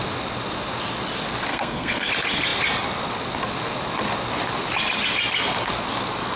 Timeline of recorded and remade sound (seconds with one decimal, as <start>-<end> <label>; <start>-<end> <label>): 0.0-1.5 recorded; 1.5-2.1 remade; 2.1-6.4 recorded